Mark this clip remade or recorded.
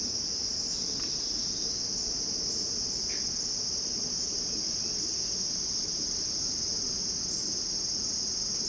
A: recorded